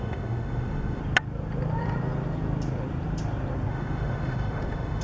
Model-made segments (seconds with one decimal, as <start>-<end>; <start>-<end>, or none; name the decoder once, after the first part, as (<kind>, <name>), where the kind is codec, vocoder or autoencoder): 0.0-1.0 (autoencoder, DAC-VAE); 3.7-5.0